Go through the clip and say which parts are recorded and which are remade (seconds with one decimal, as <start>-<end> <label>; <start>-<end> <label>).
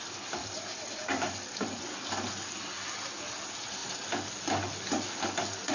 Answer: 0.0-0.4 recorded; 0.4-1.8 remade; 1.8-5.7 recorded